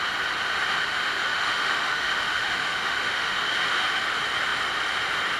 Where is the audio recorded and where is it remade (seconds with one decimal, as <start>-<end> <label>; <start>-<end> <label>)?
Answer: 0.0-0.8 recorded; 0.8-4.0 remade; 4.0-5.4 recorded